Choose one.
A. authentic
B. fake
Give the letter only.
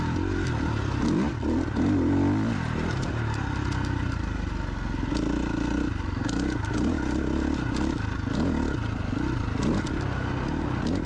A